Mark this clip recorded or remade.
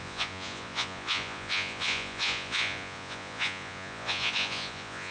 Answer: remade